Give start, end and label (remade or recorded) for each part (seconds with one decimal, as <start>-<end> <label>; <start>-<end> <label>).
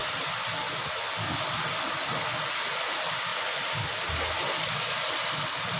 0.0-5.8 recorded